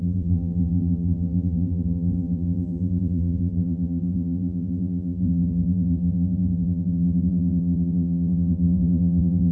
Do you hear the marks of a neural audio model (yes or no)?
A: yes